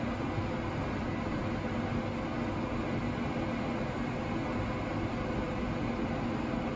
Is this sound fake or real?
real